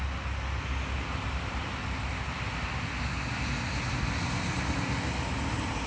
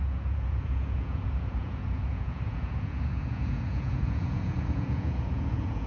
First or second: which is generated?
second